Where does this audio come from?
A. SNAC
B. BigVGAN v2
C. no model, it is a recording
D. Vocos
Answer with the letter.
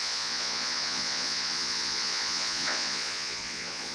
D